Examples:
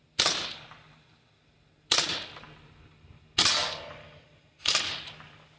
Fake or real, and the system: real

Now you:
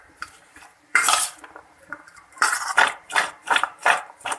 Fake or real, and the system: fake, vocoder, BigVGAN v2